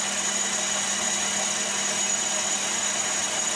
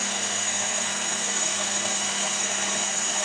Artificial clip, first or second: second